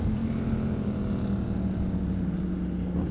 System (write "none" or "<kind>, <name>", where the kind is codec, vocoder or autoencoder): none